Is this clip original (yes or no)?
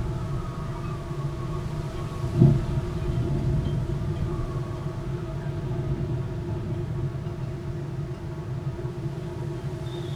yes